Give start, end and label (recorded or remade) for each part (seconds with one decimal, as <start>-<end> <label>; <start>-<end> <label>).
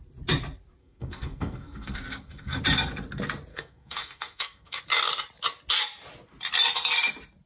0.0-0.8 recorded; 0.8-2.6 remade; 2.6-3.5 recorded; 3.5-4.8 remade; 4.8-7.5 recorded